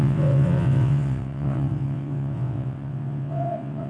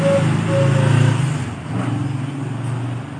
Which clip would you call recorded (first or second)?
second